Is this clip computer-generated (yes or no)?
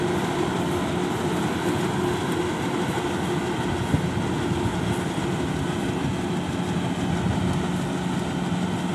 no